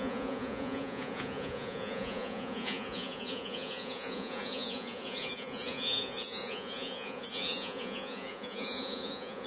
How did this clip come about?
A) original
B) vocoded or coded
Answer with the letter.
B